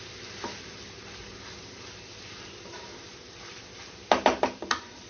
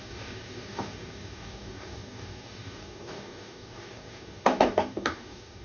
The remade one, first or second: second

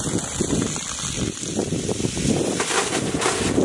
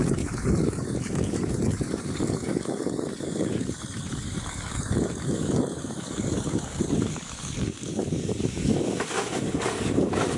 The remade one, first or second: second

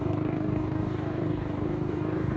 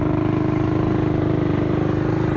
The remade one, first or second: first